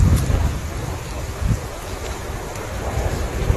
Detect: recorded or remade recorded